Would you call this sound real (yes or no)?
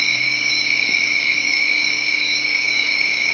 no